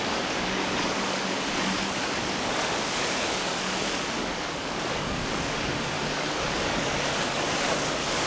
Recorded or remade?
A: remade